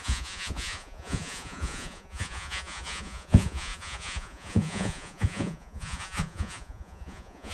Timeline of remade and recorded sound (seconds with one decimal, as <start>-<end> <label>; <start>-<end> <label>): 0.0-7.5 remade